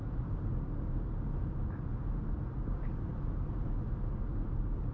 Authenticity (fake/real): real